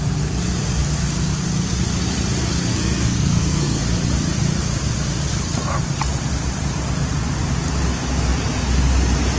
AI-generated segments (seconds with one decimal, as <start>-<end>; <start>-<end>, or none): 2.7-3.8